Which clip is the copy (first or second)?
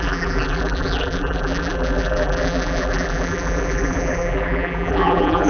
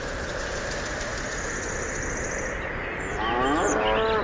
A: first